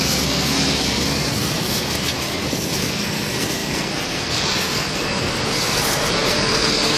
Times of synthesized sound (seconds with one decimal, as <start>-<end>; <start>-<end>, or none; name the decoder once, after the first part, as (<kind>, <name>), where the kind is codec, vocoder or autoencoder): 0.0-7.0 (codec, SNAC)